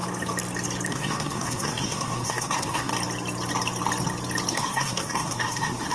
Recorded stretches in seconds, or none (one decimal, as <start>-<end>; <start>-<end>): 0.0-0.9; 2.9-4.5